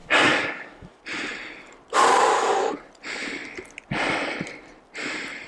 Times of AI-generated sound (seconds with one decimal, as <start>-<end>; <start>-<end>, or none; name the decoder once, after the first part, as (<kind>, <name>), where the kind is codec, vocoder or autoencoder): 0.0-1.0 (codec, DAC); 2.1-2.7